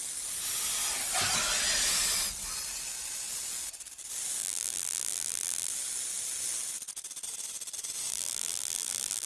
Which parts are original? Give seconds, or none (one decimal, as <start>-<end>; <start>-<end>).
0.0-4.4; 5.7-8.1